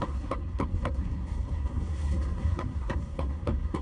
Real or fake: fake